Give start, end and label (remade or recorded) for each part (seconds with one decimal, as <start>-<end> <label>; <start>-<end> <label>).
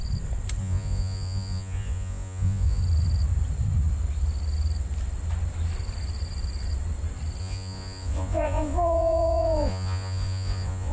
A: 0.0-0.6 recorded; 0.6-2.8 remade; 2.8-7.4 recorded; 7.4-10.9 remade